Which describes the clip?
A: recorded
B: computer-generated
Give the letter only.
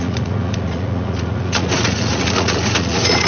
B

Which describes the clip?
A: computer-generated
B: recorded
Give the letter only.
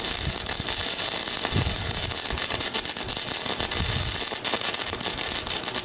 B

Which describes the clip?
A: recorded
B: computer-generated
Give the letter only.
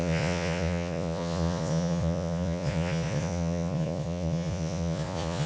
B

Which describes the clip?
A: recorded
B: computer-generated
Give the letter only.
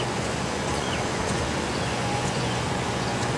B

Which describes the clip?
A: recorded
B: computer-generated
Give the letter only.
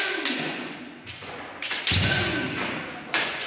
B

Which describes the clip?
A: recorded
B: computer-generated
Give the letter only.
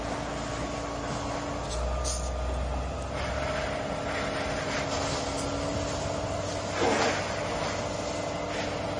A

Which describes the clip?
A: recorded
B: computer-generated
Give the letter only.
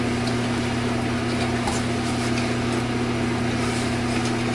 A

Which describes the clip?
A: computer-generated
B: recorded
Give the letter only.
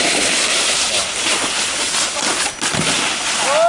B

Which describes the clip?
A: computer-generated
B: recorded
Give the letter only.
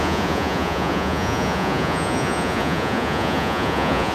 A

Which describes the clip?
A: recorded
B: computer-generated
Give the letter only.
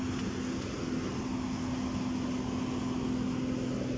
A